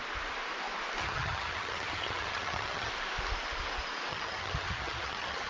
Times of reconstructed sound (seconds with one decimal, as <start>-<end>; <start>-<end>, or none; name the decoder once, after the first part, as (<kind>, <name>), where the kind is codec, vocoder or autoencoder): 1.0-2.9 (vocoder, HiFi-GAN); 4.1-5.5